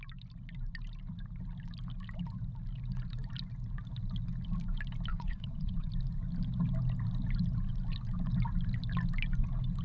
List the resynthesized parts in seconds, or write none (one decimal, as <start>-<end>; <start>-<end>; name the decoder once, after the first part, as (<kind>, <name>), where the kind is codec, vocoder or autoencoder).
5.1-5.9 (vocoder, Vocos)